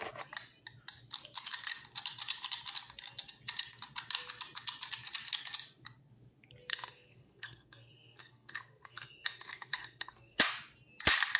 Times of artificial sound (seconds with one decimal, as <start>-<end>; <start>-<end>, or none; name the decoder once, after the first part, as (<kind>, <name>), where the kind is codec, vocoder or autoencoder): 6.7-10.5 (codec, SNAC)